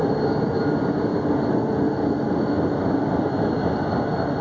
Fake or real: real